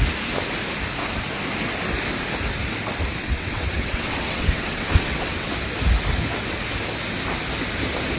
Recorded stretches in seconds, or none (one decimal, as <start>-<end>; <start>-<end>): 0.0-3.2; 5.5-8.2